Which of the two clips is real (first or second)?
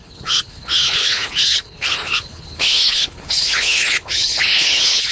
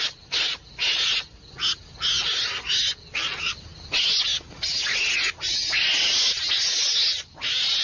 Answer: second